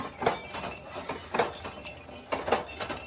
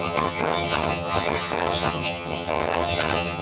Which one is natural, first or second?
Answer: first